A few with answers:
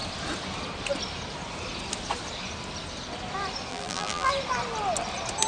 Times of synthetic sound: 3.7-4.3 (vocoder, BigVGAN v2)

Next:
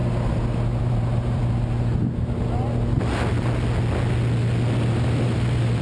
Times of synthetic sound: 0.8-1.4 (vocoder, BigVGAN v2); 4.9-5.8